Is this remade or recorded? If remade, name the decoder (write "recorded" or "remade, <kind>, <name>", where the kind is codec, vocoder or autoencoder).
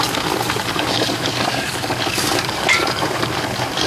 remade, codec, DAC